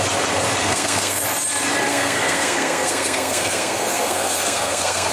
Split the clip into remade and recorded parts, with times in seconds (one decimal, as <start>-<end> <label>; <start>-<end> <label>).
0.0-0.6 recorded; 0.6-1.2 remade; 1.2-1.9 recorded; 1.9-5.1 remade